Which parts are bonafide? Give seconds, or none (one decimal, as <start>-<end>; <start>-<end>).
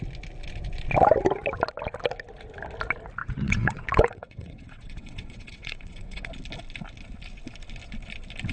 0.0-3.2; 6.3-8.5